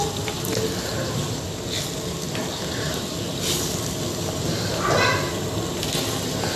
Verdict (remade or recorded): recorded